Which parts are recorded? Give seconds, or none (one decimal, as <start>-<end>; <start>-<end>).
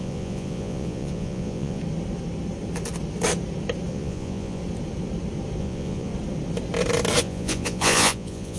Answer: 1.8-3.9; 4.6-5.6; 6.1-7.2